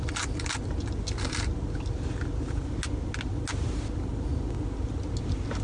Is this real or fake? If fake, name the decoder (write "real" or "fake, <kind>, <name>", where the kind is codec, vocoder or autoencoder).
real